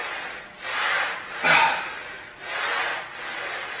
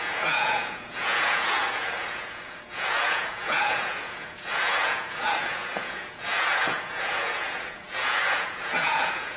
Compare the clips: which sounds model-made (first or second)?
second